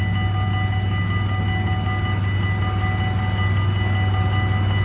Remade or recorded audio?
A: recorded